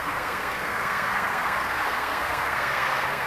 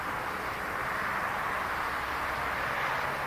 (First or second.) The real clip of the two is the second